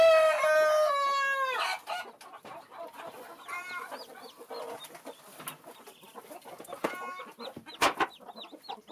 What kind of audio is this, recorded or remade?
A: recorded